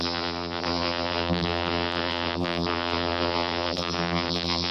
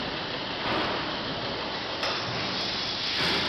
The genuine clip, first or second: second